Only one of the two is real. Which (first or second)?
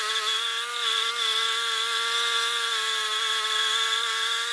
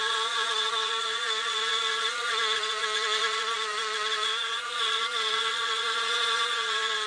first